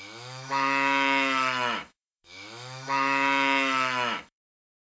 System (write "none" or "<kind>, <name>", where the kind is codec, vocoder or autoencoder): autoencoder, DAC-VAE